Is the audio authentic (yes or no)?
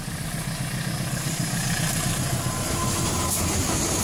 yes